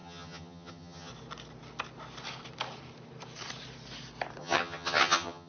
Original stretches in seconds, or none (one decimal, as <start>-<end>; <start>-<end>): 1.1-4.4